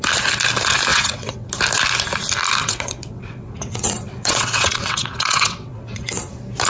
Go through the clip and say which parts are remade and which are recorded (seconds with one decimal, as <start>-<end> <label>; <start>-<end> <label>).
0.0-0.9 recorded; 0.9-1.5 remade; 1.5-2.6 recorded; 2.6-6.3 remade; 6.3-6.7 recorded